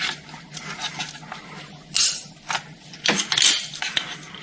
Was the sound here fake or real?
real